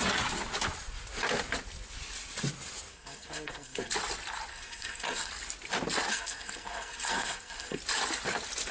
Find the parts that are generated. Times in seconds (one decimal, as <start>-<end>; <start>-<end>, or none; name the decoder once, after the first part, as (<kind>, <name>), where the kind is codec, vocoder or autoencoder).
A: 2.9-3.9 (codec, SNAC); 4.5-5.3; 6.1-7.8